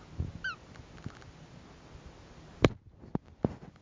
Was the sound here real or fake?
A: real